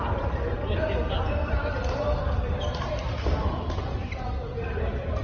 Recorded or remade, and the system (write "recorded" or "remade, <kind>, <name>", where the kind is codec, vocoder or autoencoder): recorded